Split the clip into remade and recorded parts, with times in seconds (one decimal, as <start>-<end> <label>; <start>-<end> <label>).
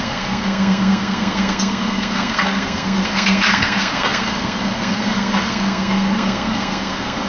0.0-7.3 remade